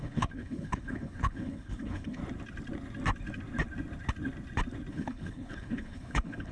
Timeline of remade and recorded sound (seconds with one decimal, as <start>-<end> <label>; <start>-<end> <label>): 0.0-2.2 remade; 2.2-4.9 recorded; 4.9-6.5 remade